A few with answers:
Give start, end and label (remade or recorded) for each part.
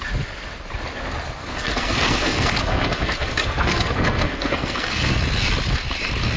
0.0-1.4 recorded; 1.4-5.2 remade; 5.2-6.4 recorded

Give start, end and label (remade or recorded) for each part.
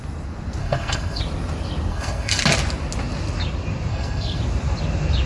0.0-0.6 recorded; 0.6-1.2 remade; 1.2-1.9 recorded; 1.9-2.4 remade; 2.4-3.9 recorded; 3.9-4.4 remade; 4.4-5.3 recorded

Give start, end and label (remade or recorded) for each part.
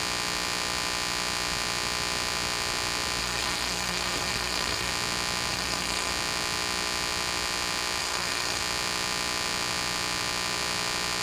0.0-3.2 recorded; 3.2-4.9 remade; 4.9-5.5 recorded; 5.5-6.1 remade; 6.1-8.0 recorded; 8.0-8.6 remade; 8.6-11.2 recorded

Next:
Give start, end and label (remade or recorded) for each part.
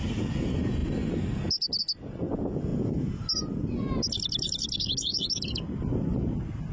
0.0-6.7 recorded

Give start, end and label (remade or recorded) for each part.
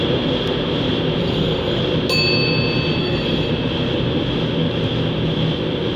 0.0-1.2 recorded; 1.2-1.8 remade; 1.8-3.0 recorded; 3.0-3.5 remade; 3.5-6.0 recorded